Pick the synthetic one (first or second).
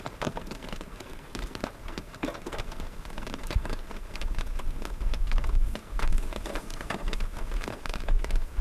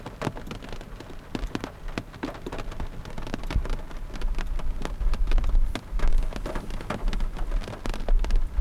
first